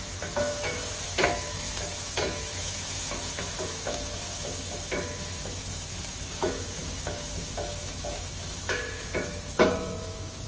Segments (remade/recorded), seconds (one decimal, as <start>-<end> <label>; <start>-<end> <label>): 0.0-10.5 remade